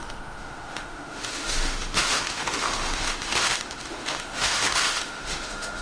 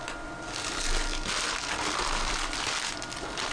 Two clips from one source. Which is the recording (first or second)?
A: second